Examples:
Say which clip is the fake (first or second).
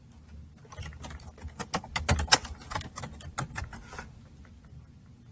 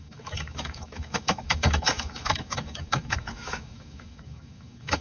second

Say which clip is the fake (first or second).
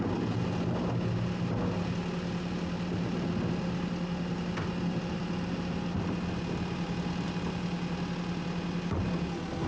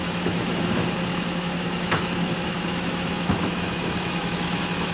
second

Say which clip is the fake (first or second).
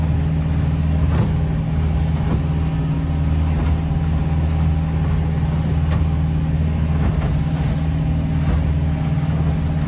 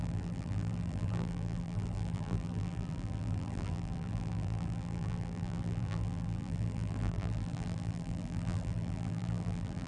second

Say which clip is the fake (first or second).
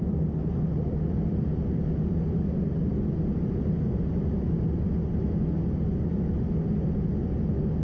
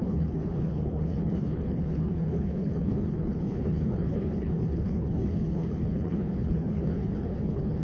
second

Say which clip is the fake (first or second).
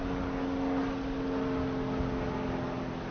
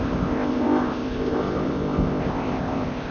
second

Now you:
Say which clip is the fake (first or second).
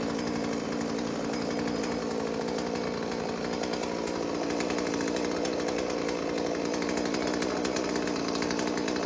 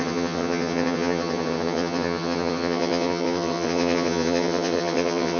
second